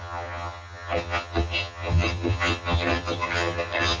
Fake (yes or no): yes